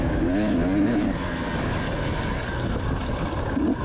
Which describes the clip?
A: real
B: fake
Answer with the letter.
A